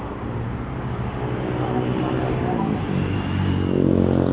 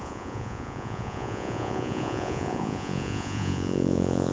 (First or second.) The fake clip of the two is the second